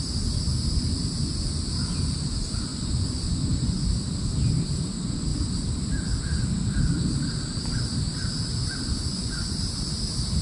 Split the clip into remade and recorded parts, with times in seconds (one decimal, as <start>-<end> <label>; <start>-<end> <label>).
0.0-2.7 recorded; 2.7-3.8 remade; 3.8-9.1 recorded; 9.1-9.7 remade; 9.7-10.4 recorded